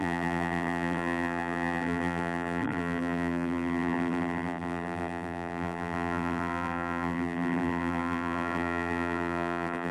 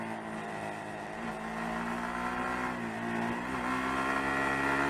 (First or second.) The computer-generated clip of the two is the first